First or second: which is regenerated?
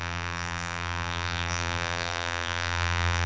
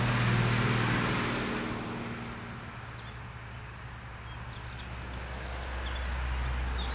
first